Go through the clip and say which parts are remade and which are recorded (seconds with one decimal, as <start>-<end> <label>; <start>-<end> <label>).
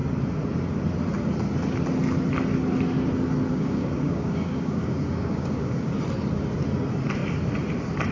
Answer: 0.0-3.5 recorded; 3.5-5.9 remade; 5.9-8.1 recorded